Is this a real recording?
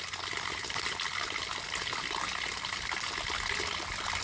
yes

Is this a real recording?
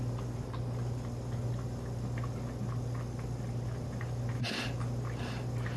yes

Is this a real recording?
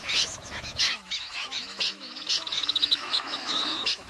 no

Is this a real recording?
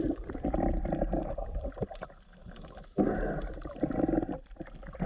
no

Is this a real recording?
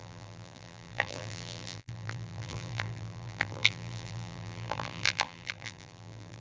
no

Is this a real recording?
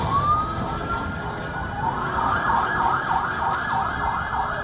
yes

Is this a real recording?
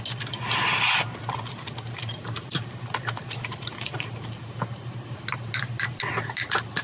yes